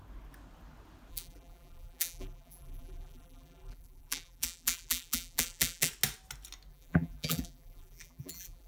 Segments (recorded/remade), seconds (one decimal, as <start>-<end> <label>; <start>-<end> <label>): 0.0-1.1 recorded; 1.1-5.9 remade; 5.9-6.7 recorded; 6.7-8.7 remade